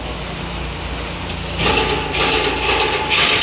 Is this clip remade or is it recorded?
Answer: recorded